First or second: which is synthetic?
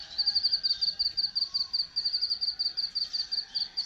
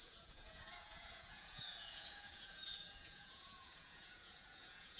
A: second